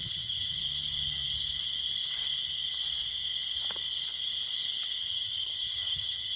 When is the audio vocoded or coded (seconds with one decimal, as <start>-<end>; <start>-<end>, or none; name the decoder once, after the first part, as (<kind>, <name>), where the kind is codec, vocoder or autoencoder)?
0.0-0.6 (vocoder, HiFi-GAN); 5.1-6.4